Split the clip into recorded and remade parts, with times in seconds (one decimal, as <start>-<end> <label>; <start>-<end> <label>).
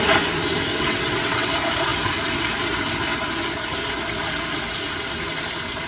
0.0-0.7 recorded; 0.7-1.5 remade; 1.5-5.9 recorded